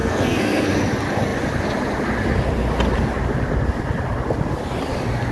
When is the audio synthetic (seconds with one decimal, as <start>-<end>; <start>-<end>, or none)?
0.0-0.7